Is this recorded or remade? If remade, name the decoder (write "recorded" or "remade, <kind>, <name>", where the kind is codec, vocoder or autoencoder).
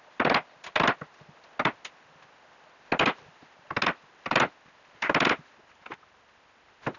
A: recorded